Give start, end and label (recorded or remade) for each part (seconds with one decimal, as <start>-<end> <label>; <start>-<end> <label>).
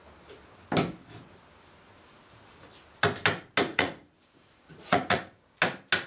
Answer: 0.0-3.7 recorded; 3.7-5.2 remade; 5.2-6.1 recorded